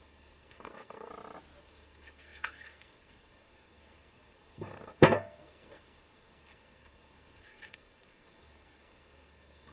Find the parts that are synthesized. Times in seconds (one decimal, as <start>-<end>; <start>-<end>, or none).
0.0-1.1; 1.6-9.7